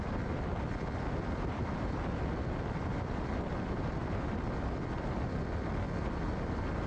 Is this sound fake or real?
fake